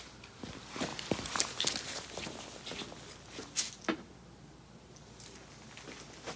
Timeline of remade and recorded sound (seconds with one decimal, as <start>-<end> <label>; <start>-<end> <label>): 0.0-6.4 recorded